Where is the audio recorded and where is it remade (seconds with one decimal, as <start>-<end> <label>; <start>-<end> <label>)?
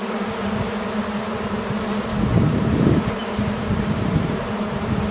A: 0.0-3.1 recorded; 3.1-5.1 remade